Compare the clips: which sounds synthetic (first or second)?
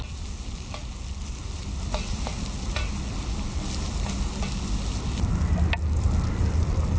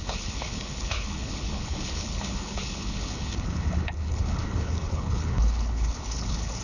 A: second